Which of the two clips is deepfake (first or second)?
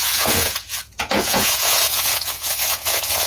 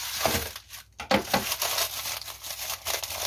first